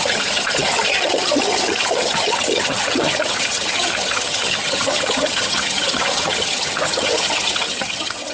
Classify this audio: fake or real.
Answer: fake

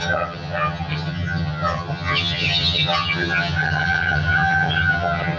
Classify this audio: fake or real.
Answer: fake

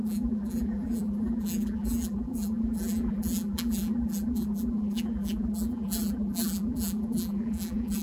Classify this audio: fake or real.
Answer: fake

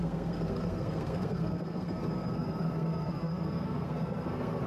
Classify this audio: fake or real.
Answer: fake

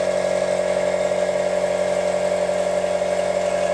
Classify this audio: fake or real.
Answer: real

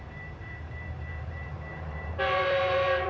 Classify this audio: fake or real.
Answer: fake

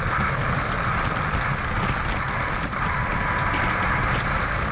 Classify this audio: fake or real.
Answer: real